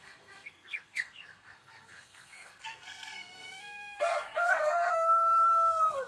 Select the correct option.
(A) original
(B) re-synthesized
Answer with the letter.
B